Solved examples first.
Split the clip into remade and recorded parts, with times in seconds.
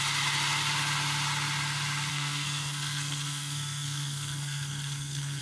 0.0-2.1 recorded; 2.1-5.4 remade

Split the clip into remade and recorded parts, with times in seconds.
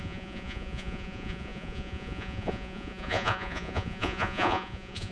0.0-5.1 remade